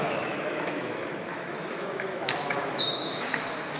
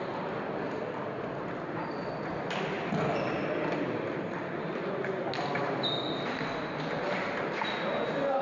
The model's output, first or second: first